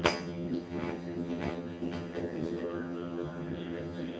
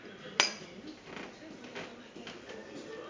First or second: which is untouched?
second